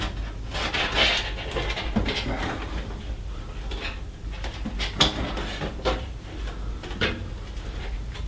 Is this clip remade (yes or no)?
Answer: no